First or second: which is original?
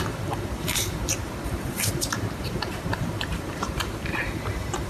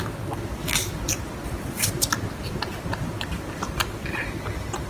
second